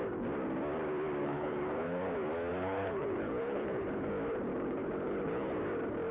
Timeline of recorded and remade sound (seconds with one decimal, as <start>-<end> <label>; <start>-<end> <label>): 0.0-1.2 recorded; 1.2-2.1 remade; 2.1-2.5 recorded; 2.5-4.1 remade; 4.1-4.5 recorded; 4.5-5.5 remade; 5.5-6.1 recorded